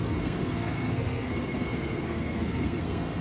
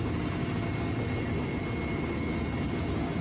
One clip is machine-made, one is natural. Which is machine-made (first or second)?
first